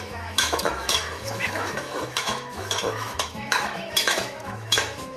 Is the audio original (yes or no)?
no